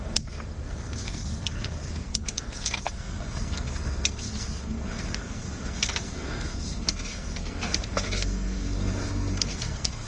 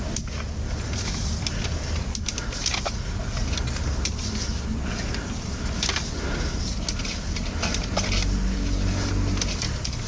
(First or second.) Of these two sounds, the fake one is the first